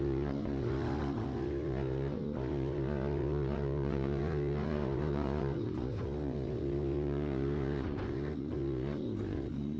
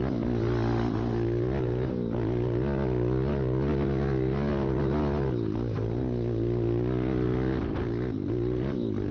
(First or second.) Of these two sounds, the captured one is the second